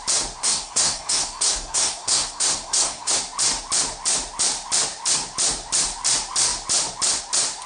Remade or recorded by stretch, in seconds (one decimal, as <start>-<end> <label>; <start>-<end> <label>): 0.0-0.4 recorded; 0.4-3.2 remade; 3.2-7.7 recorded